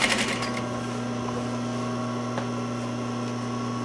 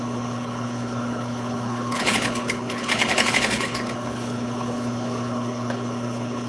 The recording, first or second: first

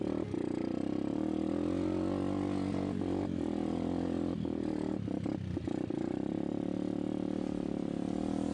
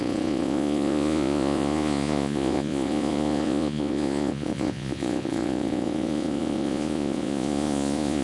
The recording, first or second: first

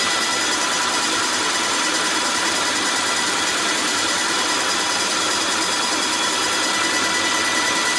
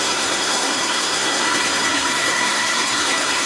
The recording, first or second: first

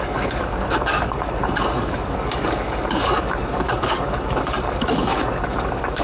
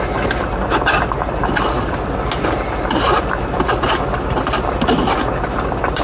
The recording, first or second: second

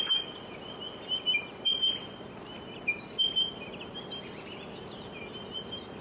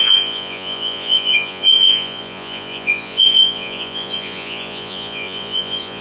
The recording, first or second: first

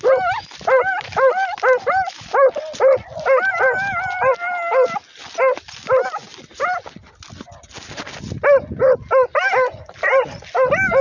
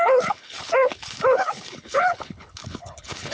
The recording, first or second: first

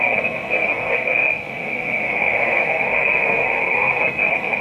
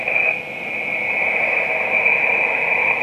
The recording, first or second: second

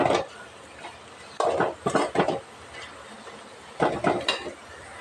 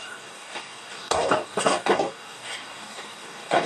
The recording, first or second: first